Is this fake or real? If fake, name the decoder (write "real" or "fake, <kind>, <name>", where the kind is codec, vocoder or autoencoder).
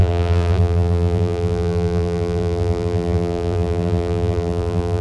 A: fake, vocoder, BigVGAN v2